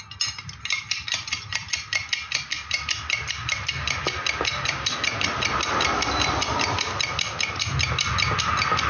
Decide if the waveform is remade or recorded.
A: recorded